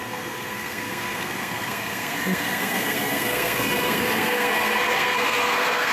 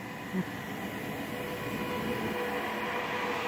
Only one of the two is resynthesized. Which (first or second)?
first